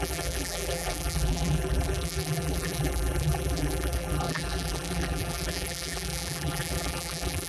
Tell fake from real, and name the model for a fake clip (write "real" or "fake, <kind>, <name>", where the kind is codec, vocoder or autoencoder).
fake, vocoder, BigVGAN v2